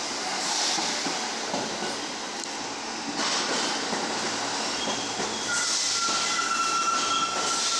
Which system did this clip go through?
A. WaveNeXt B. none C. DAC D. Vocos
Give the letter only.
B